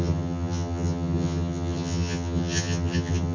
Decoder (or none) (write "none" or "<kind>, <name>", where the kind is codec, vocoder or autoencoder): vocoder, HiFi-GAN